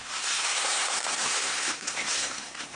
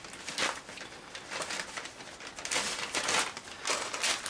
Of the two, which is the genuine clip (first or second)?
second